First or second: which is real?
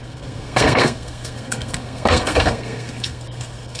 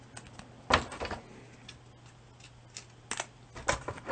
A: second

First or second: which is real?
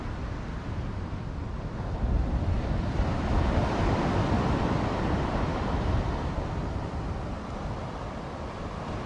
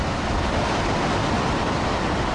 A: second